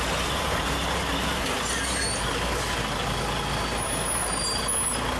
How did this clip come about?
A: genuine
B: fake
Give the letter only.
A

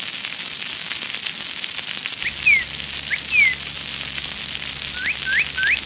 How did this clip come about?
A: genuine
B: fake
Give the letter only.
A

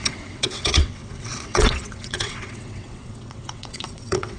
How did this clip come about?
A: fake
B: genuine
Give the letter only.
A